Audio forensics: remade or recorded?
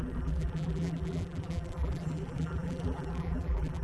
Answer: remade